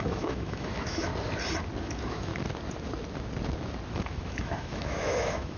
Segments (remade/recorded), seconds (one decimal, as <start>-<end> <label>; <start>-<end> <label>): 0.0-1.1 remade; 1.1-1.8 recorded; 1.8-2.3 remade; 2.3-3.9 recorded; 3.9-5.6 remade